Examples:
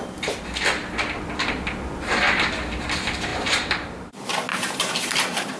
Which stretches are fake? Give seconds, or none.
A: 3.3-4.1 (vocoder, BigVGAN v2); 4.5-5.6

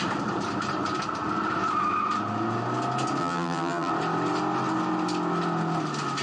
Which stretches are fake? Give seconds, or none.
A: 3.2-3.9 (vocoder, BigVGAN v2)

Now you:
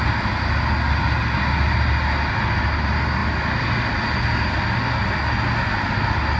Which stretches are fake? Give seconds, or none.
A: none

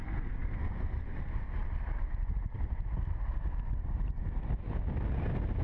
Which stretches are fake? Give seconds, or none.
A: none